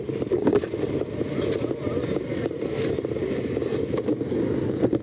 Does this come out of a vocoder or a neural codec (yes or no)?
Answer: no